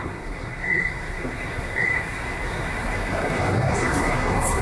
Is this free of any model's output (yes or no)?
no